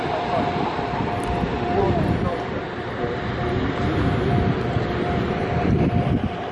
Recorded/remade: recorded